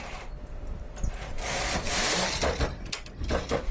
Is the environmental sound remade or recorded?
recorded